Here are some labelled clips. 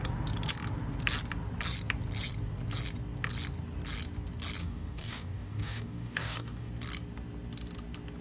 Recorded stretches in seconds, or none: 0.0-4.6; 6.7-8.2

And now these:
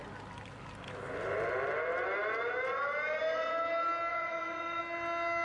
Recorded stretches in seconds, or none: 0.0-4.1; 4.8-5.4

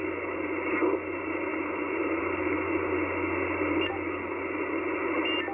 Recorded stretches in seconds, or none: 0.0-5.5

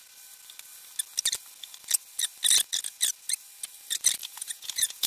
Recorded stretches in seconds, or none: 0.0-4.2

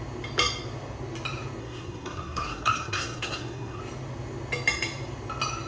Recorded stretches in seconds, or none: 0.0-1.6; 3.8-5.7

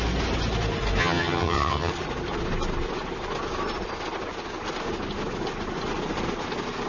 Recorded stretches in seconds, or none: 0.0-1.0; 1.9-6.9

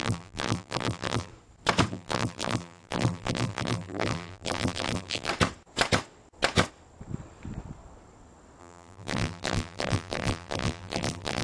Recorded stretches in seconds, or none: 1.3-1.9; 5.3-8.6